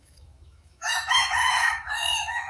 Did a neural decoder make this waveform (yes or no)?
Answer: yes